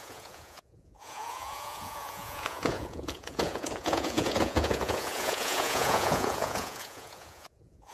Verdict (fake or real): fake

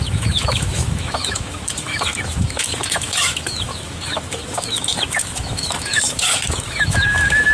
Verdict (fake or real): fake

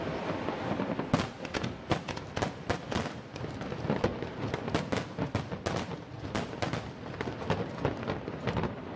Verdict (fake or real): real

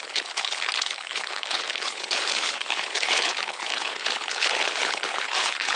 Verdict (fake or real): fake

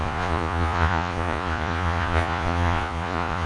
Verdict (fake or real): fake